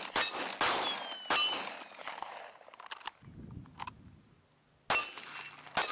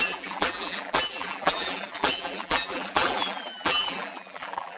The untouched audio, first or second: first